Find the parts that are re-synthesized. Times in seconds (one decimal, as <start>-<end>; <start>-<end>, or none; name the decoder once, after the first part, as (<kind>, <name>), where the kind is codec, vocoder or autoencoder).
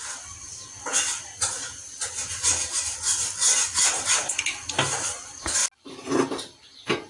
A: none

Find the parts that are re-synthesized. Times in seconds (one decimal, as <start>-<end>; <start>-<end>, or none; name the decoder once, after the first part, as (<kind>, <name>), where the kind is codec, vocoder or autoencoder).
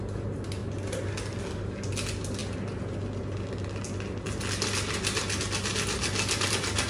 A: none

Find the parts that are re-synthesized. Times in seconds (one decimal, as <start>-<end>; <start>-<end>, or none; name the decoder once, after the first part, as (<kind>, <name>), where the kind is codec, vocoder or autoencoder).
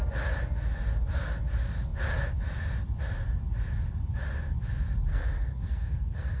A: 5.1-6.4 (codec, SNAC)